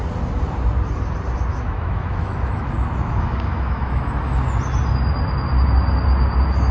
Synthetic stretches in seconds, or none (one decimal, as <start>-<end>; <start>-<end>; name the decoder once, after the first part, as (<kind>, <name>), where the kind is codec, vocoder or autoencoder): 1.5-4.0 (autoencoder, DAC-VAE)